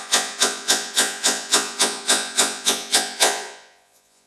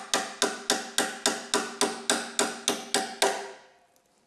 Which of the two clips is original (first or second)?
second